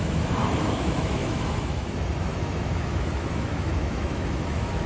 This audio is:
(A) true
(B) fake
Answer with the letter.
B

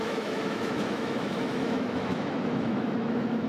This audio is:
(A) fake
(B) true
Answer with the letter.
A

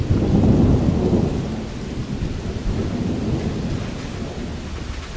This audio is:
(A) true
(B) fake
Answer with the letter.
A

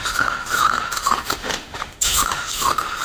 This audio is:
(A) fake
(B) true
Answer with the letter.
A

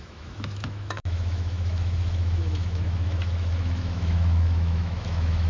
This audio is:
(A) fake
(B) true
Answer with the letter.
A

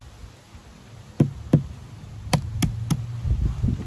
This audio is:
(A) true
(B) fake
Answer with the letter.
A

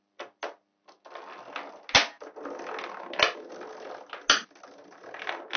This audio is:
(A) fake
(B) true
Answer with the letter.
B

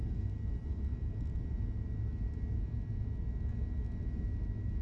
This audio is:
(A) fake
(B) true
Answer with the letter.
B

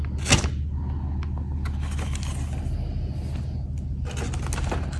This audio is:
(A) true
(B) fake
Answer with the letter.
A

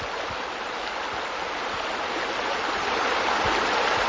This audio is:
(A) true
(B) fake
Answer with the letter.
A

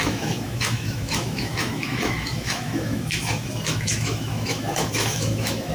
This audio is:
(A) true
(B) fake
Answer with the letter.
B